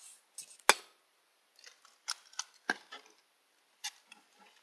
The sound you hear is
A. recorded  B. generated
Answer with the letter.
A